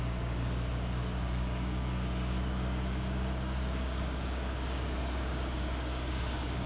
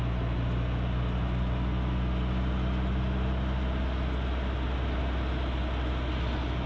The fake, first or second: first